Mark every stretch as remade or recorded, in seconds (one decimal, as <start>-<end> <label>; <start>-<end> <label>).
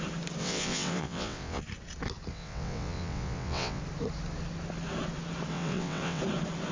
0.0-0.4 recorded; 0.4-1.6 remade; 1.6-2.3 recorded; 2.3-3.8 remade; 3.8-5.5 recorded; 5.5-6.2 remade; 6.2-6.7 recorded